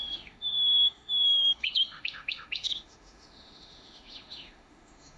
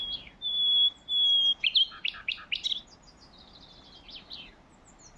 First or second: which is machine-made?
first